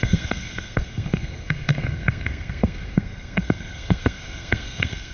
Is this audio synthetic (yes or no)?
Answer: yes